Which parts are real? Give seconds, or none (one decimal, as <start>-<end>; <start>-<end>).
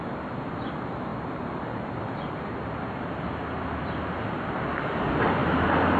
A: 5.4-6.0